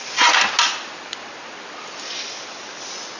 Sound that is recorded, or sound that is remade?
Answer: recorded